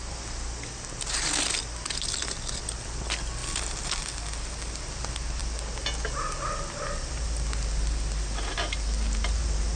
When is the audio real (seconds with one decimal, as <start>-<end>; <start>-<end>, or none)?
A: 0.0-9.8